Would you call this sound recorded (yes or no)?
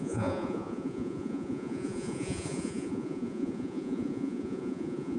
no